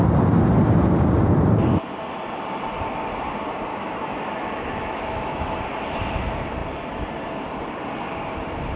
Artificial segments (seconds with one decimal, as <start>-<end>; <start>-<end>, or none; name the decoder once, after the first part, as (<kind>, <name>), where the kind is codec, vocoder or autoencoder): 3.7-5.6 (autoencoder, DAC-VAE)